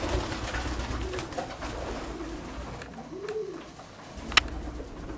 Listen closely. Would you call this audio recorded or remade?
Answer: recorded